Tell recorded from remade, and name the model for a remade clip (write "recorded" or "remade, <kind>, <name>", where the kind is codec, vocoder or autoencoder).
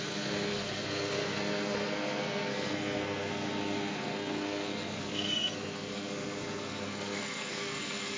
remade, codec, SNAC